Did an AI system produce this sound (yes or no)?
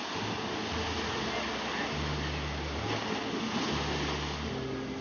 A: no